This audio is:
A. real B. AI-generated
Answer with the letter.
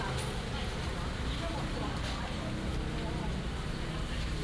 A